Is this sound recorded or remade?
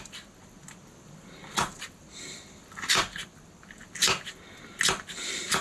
recorded